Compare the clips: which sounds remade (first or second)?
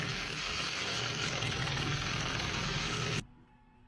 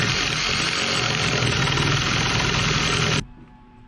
first